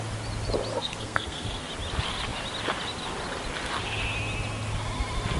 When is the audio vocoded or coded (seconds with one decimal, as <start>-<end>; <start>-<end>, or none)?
0.7-1.7